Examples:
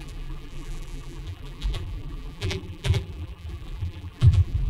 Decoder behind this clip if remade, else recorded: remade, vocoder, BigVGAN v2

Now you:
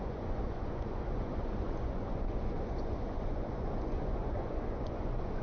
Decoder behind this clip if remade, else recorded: remade, vocoder, Vocos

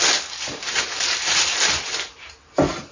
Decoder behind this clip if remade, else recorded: recorded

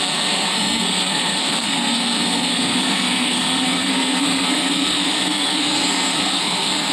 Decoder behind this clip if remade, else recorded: remade, codec, SNAC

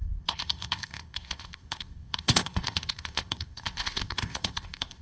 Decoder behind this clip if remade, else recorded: remade, codec, ZipCodec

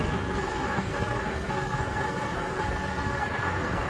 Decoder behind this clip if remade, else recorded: remade, codec, SNAC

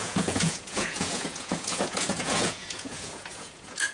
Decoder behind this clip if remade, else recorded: remade, vocoder, Vocos